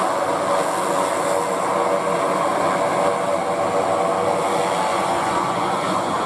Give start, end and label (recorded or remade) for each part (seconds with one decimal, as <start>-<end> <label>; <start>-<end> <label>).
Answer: 0.0-4.9 recorded; 4.9-6.3 remade